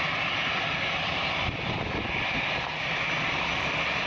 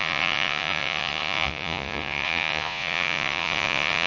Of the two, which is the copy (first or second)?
second